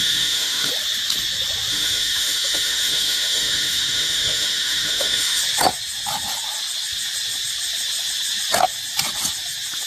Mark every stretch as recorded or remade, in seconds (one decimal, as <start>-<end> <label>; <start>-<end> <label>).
0.0-0.7 remade; 0.7-1.7 recorded; 1.7-5.4 remade; 5.4-9.9 recorded